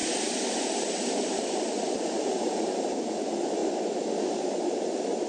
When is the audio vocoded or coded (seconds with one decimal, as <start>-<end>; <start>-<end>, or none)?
0.0-3.6; 4.2-5.3